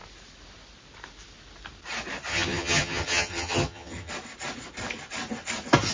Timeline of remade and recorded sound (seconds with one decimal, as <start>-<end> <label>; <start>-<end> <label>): 0.0-2.3 recorded; 2.3-4.1 remade; 4.1-5.9 recorded